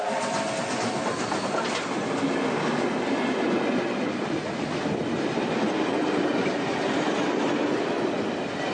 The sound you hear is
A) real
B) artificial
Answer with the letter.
A